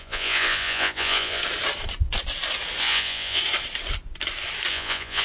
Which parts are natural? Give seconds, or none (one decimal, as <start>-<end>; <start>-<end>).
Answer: 1.4-2.8; 3.4-4.7